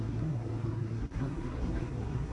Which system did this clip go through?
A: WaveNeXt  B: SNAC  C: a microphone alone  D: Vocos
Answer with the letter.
B